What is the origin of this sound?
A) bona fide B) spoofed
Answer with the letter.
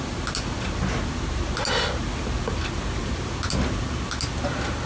A